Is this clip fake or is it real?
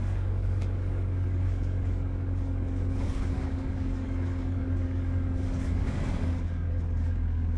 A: fake